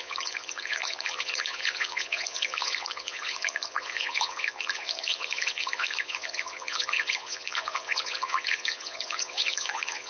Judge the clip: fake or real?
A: fake